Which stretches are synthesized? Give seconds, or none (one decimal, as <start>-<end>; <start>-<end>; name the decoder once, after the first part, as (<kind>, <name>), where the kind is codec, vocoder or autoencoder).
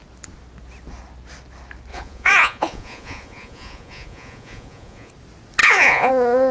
1.9-5.1 (vocoder, Vocos); 5.6-6.1